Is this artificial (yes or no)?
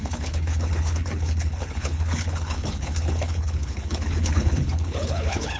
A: yes